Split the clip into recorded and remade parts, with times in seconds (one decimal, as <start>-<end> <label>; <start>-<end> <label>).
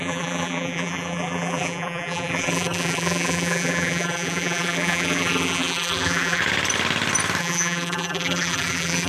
0.0-6.4 remade; 6.4-7.4 recorded; 7.4-9.1 remade